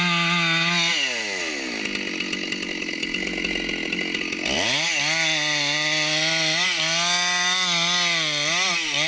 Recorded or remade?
recorded